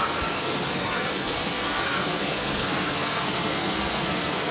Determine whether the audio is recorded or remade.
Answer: remade